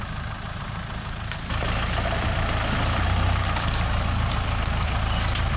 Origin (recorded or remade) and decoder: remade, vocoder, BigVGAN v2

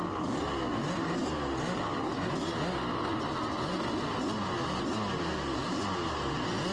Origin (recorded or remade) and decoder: recorded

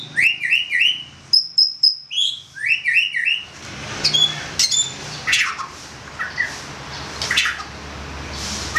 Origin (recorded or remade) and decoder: recorded